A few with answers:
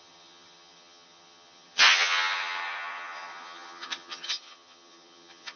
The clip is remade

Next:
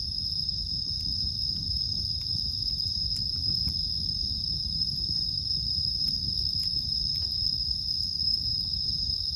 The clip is remade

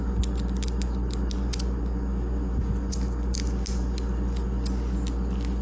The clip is recorded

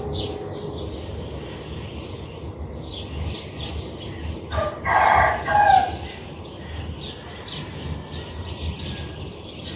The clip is recorded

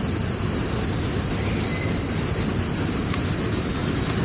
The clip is recorded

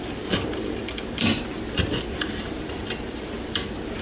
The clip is remade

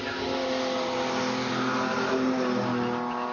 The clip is recorded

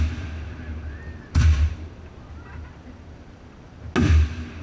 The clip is recorded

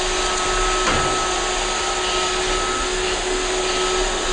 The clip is recorded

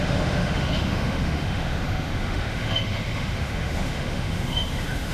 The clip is remade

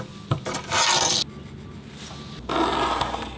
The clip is recorded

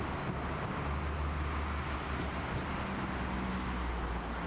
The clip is recorded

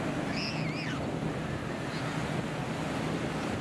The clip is recorded